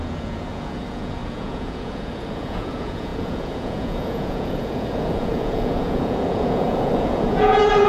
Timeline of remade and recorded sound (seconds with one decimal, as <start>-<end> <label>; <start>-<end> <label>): 0.0-7.9 remade